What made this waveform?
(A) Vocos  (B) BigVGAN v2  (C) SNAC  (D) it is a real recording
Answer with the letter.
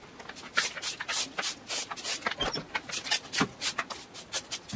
D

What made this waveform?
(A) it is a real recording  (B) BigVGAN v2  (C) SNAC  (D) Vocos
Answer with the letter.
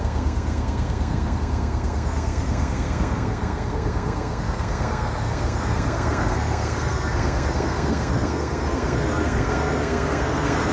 C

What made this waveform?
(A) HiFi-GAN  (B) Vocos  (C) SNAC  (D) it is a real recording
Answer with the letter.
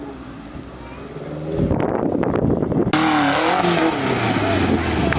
D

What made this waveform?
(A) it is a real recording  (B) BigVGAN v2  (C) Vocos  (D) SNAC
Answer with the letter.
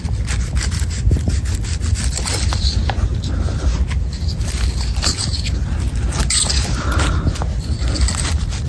A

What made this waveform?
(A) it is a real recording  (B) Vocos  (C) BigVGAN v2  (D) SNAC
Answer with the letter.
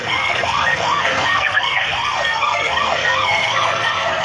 D